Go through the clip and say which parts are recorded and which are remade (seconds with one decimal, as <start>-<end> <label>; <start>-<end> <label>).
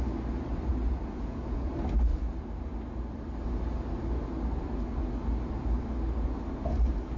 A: 0.0-0.7 recorded; 0.7-1.7 remade; 1.7-7.2 recorded